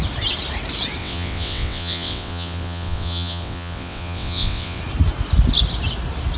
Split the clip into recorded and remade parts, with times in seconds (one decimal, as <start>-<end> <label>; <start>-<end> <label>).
0.0-1.0 recorded; 1.0-4.8 remade; 4.8-6.4 recorded